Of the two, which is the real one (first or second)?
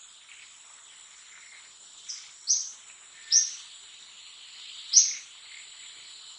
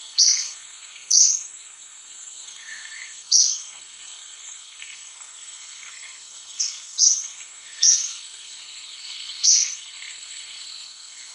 first